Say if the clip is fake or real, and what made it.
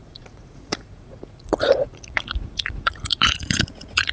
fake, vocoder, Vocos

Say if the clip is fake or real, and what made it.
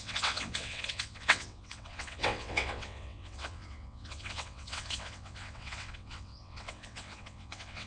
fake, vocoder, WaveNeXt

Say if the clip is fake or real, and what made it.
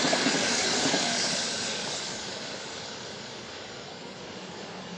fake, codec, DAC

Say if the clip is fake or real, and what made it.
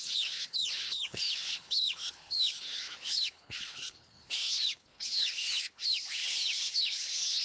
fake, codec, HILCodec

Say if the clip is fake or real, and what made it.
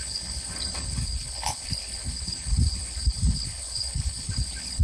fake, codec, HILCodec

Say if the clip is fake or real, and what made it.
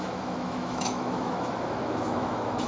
fake, autoencoder, DAC-VAE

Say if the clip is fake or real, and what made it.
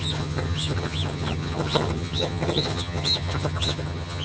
fake, vocoder, HiFi-GAN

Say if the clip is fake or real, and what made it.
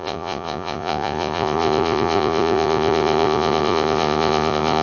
fake, vocoder, Vocos